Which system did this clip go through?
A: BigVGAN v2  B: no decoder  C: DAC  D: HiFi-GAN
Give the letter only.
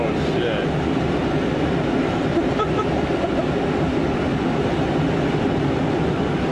B